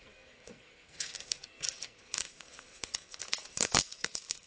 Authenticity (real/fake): fake